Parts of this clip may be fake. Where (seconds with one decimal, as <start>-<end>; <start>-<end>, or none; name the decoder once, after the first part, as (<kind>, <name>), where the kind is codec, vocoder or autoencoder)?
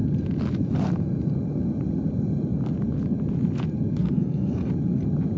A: 4.0-4.7 (codec, SNAC)